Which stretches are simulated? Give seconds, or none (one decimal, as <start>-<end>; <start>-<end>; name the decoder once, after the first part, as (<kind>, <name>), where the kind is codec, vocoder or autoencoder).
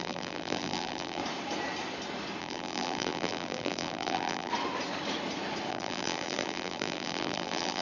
0.0-1.2 (vocoder, BigVGAN v2); 2.4-4.5; 5.7-7.8